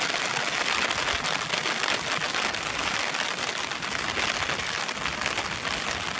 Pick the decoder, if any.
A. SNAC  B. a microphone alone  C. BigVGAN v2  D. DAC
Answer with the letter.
B